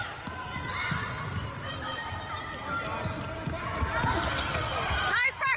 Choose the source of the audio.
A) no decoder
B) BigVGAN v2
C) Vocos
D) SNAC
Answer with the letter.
A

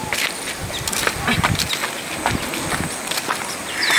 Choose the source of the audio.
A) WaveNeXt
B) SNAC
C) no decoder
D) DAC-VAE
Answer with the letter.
C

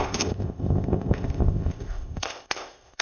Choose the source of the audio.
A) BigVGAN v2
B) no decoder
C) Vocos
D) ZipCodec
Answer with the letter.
D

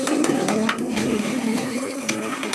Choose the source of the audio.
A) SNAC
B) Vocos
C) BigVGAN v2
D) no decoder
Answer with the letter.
A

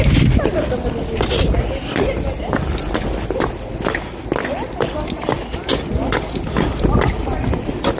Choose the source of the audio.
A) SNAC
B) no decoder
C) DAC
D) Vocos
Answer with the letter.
B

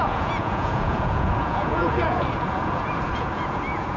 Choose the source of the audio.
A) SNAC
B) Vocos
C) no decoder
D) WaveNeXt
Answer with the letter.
B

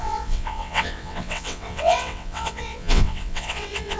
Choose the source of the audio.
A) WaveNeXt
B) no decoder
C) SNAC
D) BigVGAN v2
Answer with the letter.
A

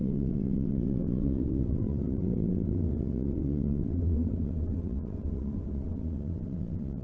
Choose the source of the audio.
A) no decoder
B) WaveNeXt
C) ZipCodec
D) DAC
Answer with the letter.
B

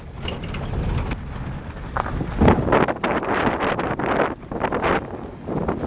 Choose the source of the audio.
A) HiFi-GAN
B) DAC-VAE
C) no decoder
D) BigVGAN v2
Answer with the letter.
C